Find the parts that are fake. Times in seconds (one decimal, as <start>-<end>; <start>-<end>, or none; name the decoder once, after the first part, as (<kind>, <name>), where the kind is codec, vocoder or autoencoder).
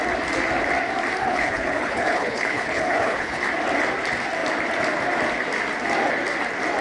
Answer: 1.2-3.4 (codec, HILCodec)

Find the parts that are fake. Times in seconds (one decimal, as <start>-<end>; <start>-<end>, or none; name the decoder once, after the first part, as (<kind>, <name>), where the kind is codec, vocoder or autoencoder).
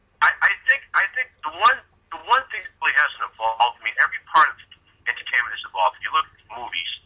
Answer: none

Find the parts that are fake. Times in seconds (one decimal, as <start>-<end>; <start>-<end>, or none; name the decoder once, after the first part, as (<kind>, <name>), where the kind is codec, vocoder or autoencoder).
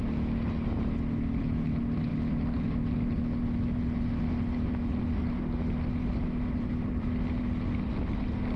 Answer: none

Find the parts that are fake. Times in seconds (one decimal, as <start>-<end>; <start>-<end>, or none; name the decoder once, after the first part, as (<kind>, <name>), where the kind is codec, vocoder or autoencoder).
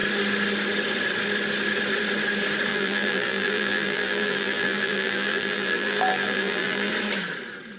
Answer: 2.7-6.9 (vocoder, BigVGAN v2)